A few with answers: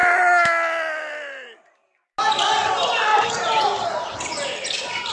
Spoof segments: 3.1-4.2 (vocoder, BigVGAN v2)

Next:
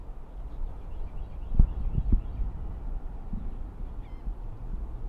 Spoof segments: 0.7-1.2 (vocoder, BigVGAN v2)

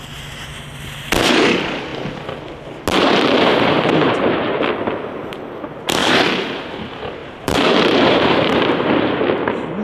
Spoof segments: 6.0-6.7 (vocoder, BigVGAN v2); 7.2-9.2

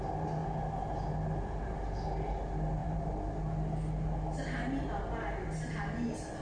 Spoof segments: 2.8-3.3 (vocoder, BigVGAN v2)

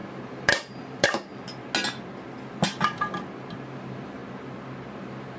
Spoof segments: 0.0-1.3 (vocoder, BigVGAN v2); 3.7-4.2; 5.0-5.4

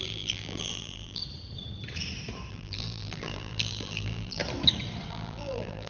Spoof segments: 0.0-1.2 (vocoder, BigVGAN v2); 2.5-4.4; 5.1-5.9

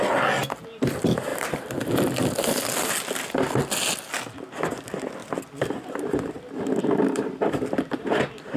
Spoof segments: 1.3-2.2 (vocoder, BigVGAN v2); 5.2-8.2

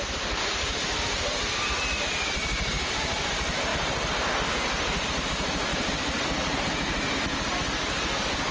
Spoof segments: 0.0-3.7 (vocoder, BigVGAN v2); 4.5-8.5